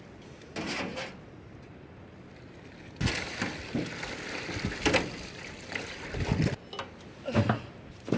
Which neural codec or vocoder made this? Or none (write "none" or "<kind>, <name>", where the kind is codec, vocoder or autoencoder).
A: none